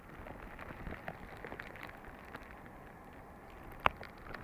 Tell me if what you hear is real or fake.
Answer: real